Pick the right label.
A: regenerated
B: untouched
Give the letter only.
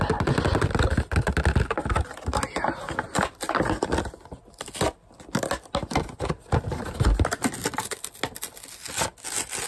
B